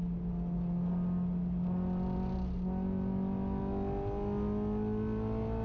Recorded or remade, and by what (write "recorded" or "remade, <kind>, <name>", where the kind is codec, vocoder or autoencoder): recorded